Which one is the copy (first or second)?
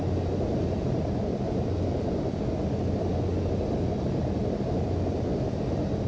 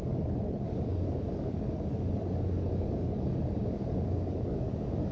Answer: second